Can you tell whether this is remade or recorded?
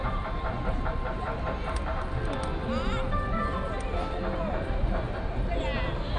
recorded